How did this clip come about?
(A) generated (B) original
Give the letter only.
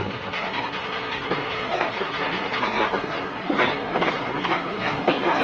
A